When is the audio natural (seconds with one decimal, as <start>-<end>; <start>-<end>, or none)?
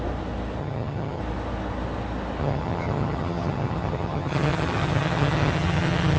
0.0-0.6; 1.2-2.4